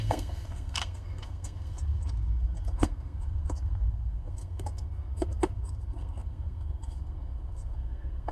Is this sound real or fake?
fake